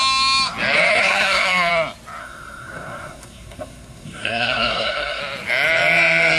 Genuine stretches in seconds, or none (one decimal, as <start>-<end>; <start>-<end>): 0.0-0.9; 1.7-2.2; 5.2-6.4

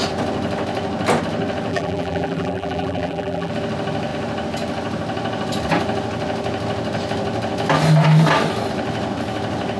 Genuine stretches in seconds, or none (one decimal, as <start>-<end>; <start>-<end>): 0.0-1.7; 3.5-9.8

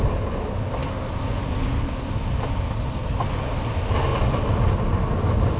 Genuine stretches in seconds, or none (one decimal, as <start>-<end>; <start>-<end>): 0.0-5.6

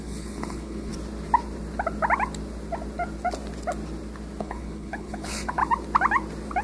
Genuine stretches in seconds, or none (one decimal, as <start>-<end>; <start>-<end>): 0.9-4.4; 5.6-6.6